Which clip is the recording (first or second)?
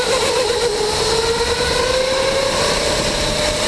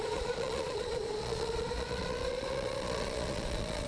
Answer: first